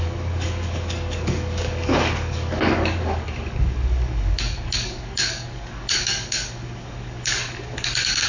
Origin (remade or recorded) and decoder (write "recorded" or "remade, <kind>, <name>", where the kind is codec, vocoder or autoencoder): remade, codec, DAC